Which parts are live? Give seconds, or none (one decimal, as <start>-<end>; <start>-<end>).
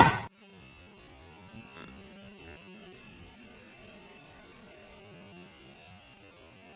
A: 0.0-2.8; 5.0-6.8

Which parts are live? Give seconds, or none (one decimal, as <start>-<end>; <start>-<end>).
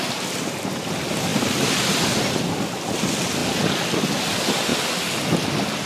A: 0.0-1.3; 2.0-5.9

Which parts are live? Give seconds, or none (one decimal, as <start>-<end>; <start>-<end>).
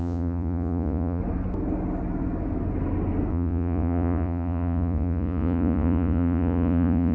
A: 1.2-3.3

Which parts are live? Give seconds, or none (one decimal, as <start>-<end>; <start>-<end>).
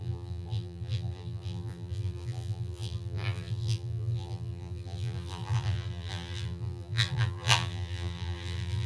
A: none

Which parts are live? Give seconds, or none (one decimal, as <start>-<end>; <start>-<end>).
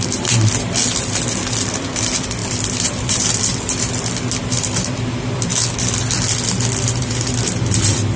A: 0.8-2.0; 5.5-7.0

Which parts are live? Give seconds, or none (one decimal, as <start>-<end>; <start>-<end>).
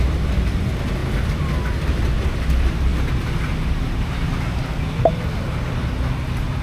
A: 0.0-6.6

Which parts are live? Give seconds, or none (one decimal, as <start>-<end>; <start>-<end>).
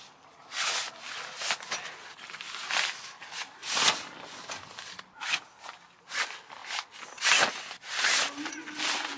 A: 0.0-9.2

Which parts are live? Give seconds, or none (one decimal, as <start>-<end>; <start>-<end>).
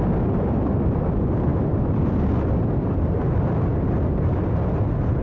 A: 0.0-5.2